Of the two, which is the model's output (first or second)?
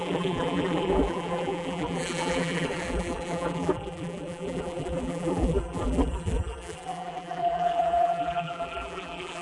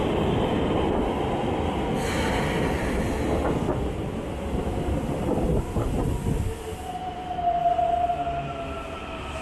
first